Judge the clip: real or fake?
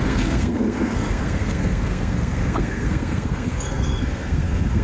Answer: fake